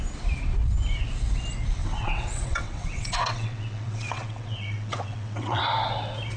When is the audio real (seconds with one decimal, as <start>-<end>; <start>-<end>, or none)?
0.0-1.8; 5.6-6.4